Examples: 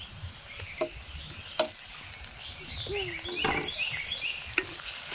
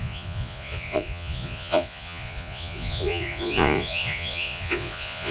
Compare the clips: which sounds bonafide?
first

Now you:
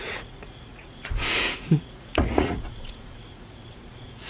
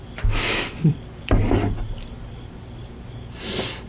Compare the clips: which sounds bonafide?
second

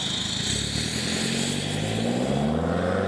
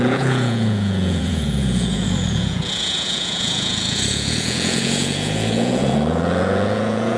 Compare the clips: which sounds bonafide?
first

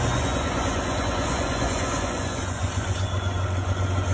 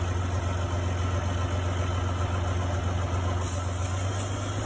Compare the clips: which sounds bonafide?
second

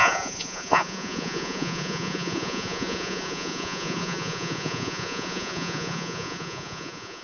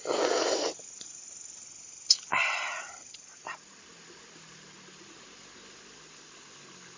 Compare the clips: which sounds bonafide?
second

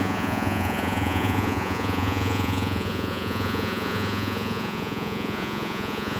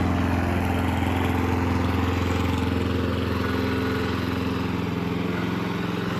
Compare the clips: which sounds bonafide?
second